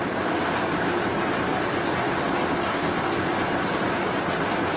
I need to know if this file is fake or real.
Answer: real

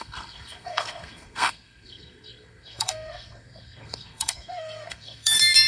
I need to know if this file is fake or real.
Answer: fake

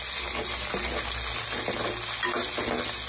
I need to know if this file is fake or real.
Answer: real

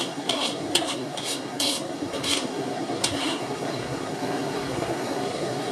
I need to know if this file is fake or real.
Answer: fake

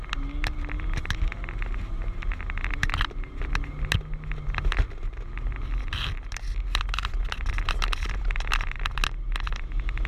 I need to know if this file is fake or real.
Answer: real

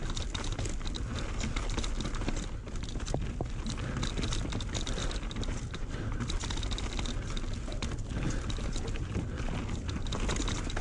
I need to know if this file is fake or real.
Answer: real